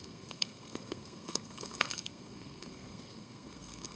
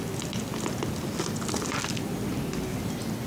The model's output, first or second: first